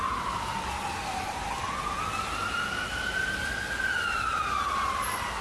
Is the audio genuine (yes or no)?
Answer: yes